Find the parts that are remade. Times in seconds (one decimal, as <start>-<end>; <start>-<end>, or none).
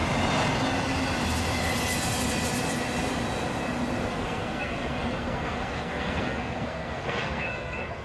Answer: 4.1-8.0